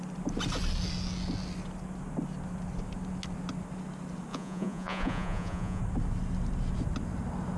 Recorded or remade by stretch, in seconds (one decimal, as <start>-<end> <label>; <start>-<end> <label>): 0.0-4.3 recorded; 4.3-5.8 remade; 5.8-7.6 recorded